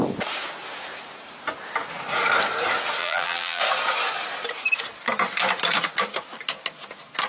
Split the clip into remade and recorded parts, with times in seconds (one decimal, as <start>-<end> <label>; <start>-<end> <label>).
0.0-3.0 recorded; 3.0-3.6 remade; 3.6-7.3 recorded